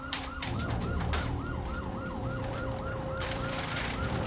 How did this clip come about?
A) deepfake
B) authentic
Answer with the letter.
A